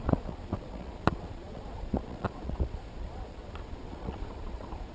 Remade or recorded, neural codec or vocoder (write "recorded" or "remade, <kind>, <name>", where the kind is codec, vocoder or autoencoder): remade, vocoder, Vocos